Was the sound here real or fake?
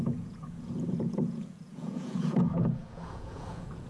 fake